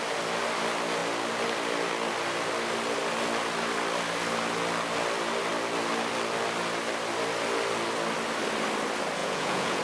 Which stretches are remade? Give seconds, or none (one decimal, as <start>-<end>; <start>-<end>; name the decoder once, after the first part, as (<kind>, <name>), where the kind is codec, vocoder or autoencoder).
9.2-9.8 (vocoder, Vocos)